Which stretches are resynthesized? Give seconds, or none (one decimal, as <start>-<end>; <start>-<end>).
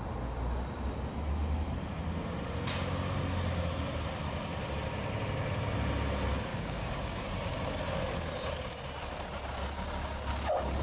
6.5-7.3